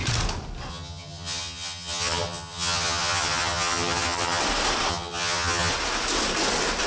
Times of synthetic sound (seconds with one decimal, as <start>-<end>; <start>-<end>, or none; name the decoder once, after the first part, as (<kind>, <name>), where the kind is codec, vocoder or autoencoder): 0.7-4.4 (vocoder, HiFi-GAN); 4.9-5.7